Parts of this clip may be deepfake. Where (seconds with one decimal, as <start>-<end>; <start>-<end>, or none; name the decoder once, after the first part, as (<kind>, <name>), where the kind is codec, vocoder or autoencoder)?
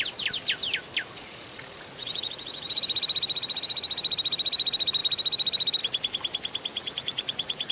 1.2-2.8 (vocoder, Vocos); 6.7-7.7